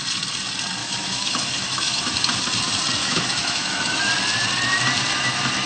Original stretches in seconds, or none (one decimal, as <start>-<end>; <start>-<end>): 0.0-0.8; 2.4-3.0; 4.1-5.7